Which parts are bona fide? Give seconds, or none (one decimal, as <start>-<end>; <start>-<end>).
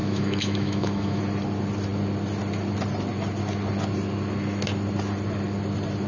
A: 1.2-6.1